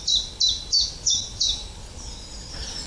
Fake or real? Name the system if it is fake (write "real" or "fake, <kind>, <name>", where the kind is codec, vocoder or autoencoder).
real